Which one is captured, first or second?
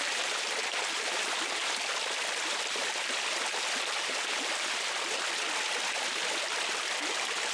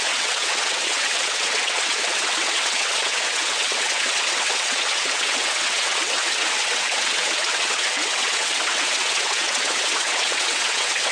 first